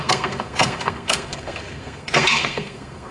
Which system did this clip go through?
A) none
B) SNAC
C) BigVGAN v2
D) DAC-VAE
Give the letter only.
B